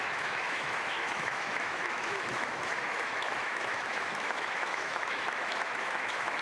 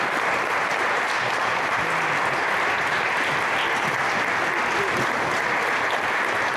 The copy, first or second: first